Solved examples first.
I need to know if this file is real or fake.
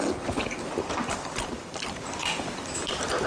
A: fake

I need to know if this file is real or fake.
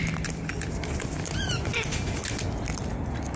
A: real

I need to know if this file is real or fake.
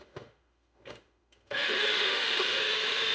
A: fake